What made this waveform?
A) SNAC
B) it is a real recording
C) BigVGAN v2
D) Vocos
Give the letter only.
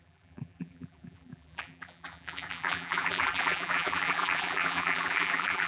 C